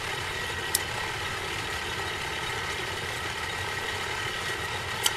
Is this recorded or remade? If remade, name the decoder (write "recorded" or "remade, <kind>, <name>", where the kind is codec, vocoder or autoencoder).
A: remade, vocoder, BigVGAN v2